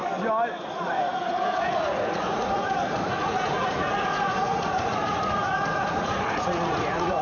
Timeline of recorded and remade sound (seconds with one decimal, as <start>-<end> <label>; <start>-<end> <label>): 0.0-0.6 recorded; 0.6-7.2 remade